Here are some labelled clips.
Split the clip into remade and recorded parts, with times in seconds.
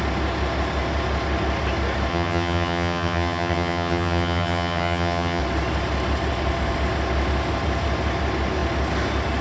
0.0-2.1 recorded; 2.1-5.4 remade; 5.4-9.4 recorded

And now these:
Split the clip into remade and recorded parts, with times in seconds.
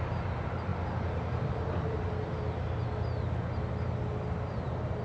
0.0-5.0 recorded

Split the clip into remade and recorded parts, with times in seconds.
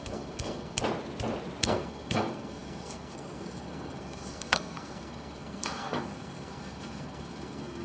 0.0-0.8 remade; 0.8-1.6 recorded; 1.6-7.8 remade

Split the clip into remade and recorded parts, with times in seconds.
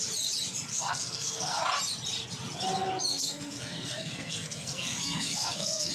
0.0-0.7 recorded; 0.7-1.6 remade; 1.6-3.1 recorded; 3.1-5.9 remade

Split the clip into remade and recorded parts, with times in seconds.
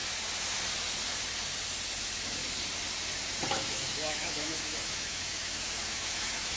0.0-2.0 recorded; 2.0-2.4 remade; 2.4-3.5 recorded; 3.5-6.6 remade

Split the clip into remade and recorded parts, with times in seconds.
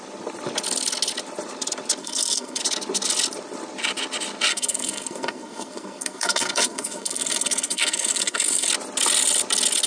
0.0-2.0 recorded; 2.0-2.6 remade; 2.6-4.5 recorded; 4.5-8.7 remade; 8.7-9.9 recorded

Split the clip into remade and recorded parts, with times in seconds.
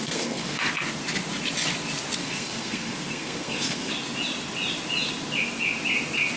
0.0-0.7 remade; 0.7-2.2 recorded; 2.2-3.9 remade; 3.9-6.4 recorded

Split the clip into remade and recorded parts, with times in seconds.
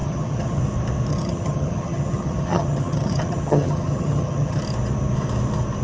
0.0-0.6 remade; 0.6-1.1 recorded; 1.1-4.6 remade; 4.6-5.8 recorded